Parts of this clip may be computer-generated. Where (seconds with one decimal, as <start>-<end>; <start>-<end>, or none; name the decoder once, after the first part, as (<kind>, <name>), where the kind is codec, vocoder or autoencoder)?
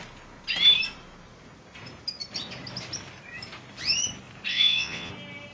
4.5-5.1 (vocoder, WaveNeXt)